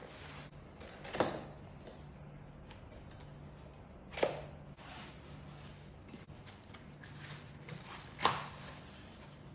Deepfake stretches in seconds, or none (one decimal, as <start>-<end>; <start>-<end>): none